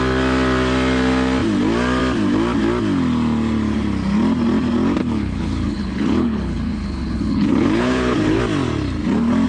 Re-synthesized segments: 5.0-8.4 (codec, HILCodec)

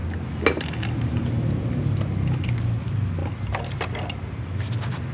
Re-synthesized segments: none

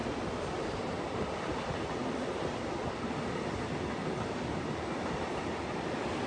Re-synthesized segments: none

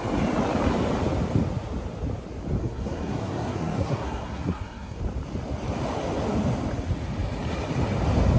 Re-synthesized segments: 2.6-5.0 (codec, SNAC)

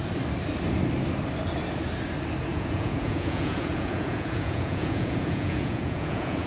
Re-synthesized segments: 2.5-6.5 (vocoder, Vocos)

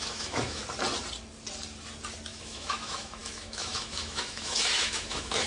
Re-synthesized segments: 0.0-0.6 (autoencoder, DAC-VAE); 2.3-5.5

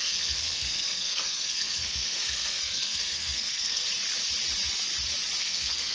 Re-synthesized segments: 0.0-3.8 (codec, SNAC); 5.4-5.9